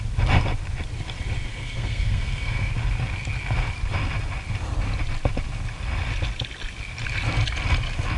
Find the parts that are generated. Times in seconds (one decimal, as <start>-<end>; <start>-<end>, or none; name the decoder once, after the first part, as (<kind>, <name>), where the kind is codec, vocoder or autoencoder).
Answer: 1.5-2.7 (codec, SNAC)